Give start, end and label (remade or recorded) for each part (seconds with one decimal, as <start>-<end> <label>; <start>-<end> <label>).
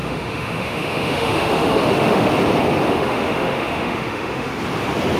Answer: 0.0-2.3 remade; 2.3-2.9 recorded; 2.9-4.5 remade; 4.5-5.2 recorded